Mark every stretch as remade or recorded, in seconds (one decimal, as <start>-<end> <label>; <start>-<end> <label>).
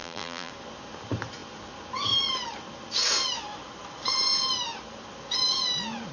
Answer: 0.0-0.5 remade; 0.5-6.1 recorded